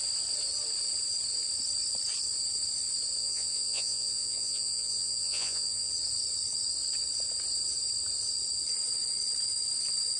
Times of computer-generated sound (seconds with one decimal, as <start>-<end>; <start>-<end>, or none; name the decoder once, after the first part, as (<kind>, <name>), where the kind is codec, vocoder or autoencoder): 3.2-5.9 (vocoder, Vocos)